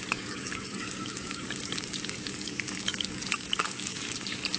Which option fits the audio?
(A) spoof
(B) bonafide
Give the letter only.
A